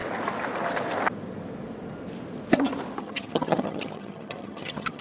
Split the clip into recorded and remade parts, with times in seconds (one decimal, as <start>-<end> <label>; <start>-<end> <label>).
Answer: 0.0-3.0 recorded; 3.0-5.0 remade